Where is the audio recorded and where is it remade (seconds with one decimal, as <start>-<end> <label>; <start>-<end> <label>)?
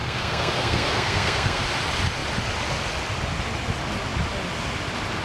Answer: 0.0-1.6 remade; 1.6-5.2 recorded